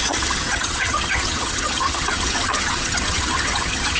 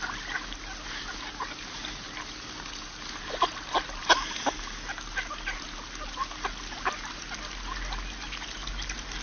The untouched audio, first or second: second